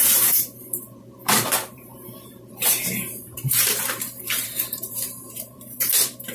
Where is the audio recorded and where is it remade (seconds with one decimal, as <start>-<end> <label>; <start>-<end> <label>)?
0.0-6.3 remade